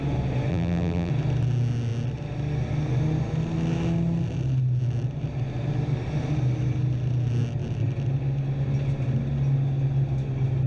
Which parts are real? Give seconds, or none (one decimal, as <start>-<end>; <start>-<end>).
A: 0.0-0.5; 1.1-10.7